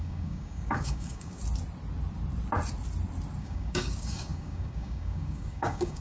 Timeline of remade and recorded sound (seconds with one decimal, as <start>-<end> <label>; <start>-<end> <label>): 0.0-1.4 remade; 1.4-3.4 recorded; 3.4-6.0 remade